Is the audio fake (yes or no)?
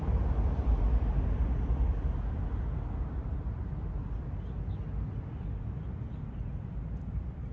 no